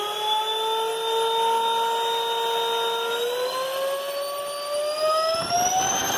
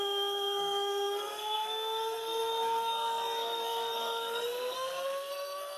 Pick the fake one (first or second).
second